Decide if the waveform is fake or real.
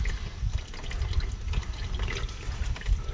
real